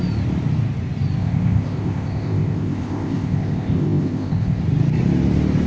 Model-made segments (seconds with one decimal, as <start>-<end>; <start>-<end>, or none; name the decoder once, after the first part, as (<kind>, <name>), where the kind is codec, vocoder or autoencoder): 1.2-4.6 (codec, ZipCodec)